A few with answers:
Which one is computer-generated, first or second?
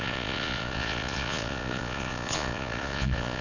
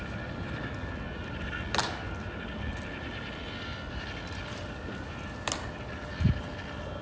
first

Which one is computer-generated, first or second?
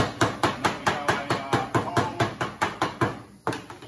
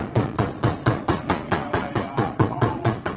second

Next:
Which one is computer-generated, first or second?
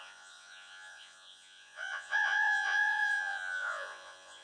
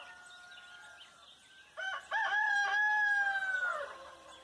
first